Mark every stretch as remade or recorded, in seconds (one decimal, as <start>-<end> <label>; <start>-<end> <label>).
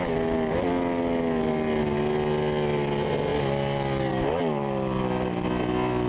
0.0-6.1 recorded